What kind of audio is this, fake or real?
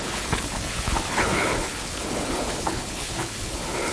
fake